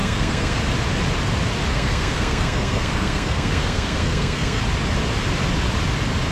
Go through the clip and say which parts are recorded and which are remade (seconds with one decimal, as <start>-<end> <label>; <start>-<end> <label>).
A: 0.0-0.6 remade; 0.6-1.7 recorded; 1.7-4.6 remade; 4.6-6.3 recorded